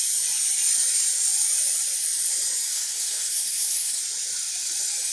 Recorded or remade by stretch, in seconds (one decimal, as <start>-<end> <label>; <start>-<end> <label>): 0.0-2.7 recorded; 2.7-4.0 remade; 4.0-5.1 recorded